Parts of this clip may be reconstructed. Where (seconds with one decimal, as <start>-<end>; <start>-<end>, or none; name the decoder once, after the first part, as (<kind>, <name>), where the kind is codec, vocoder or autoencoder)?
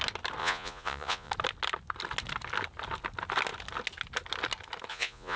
0.4-1.3 (vocoder, Vocos); 4.9-5.4